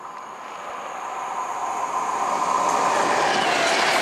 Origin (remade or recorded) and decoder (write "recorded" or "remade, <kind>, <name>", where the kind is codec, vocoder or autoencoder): recorded